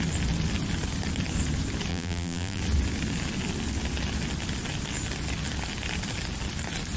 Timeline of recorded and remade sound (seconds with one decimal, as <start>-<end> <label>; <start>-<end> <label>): 0.0-1.9 recorded; 1.9-2.6 remade; 2.6-7.0 recorded